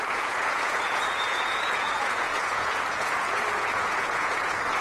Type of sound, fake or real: fake